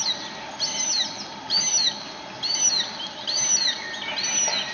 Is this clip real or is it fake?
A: real